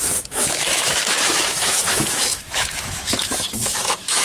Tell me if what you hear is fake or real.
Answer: fake